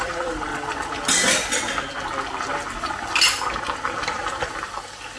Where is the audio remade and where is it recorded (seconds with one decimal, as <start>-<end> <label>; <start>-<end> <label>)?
0.0-0.5 remade; 0.5-3.6 recorded; 3.6-4.2 remade; 4.2-5.2 recorded